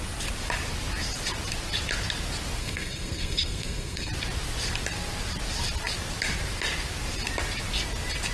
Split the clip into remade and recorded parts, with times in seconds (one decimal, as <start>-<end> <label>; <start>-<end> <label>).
0.0-2.6 recorded; 2.6-4.1 remade; 4.1-8.3 recorded

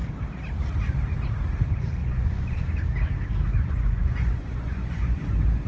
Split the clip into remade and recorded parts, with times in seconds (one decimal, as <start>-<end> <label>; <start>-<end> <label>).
0.0-2.0 recorded; 2.0-2.6 remade; 2.6-3.5 recorded; 3.5-5.2 remade; 5.2-5.7 recorded

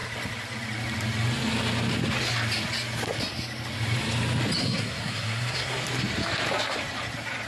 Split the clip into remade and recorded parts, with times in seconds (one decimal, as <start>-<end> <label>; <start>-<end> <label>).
0.0-4.6 recorded; 4.6-5.8 remade; 5.8-7.5 recorded